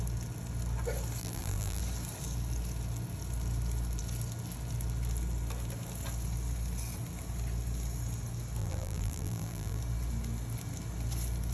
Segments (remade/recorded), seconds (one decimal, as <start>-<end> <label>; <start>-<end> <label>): 0.0-1.2 recorded; 1.2-1.8 remade; 1.8-8.6 recorded; 8.6-9.8 remade; 9.8-11.5 recorded